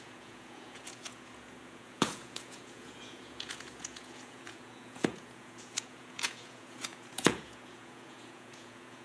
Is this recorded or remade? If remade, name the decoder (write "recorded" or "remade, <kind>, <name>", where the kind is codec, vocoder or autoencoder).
remade, vocoder, Vocos